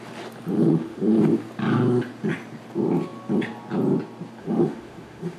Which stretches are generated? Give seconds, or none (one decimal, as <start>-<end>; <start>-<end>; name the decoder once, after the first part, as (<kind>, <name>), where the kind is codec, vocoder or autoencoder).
0.5-1.2 (autoencoder, DAC-VAE); 4.4-5.4